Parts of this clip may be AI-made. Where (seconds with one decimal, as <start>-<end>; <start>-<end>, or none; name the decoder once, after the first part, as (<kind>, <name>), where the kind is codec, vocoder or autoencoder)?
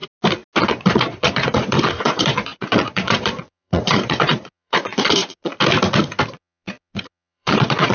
0.6-5.5 (vocoder, Vocos); 6.3-7.9